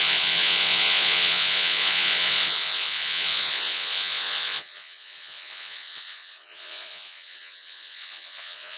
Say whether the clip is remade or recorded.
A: remade